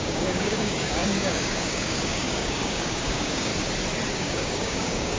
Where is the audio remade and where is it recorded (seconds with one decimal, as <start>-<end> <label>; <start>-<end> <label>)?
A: 0.0-3.5 remade; 3.5-4.1 recorded; 4.1-5.2 remade

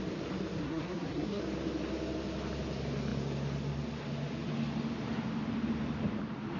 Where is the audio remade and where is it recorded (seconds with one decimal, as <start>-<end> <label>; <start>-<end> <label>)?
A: 0.0-0.6 recorded; 0.6-1.4 remade; 1.4-6.6 recorded